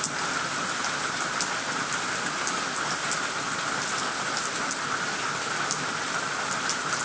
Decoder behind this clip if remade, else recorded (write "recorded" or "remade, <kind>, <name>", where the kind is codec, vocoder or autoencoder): recorded